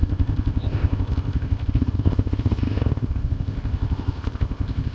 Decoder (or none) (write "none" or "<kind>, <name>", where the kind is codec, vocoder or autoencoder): codec, ZipCodec